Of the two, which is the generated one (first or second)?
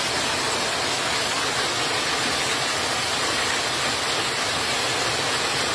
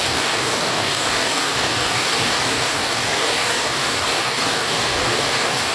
second